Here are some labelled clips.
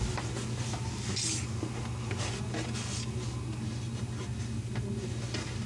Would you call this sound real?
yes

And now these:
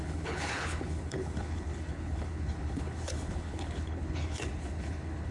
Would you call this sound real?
no